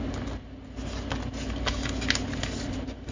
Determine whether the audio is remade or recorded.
recorded